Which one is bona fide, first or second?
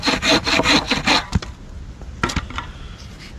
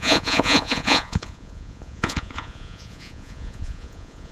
first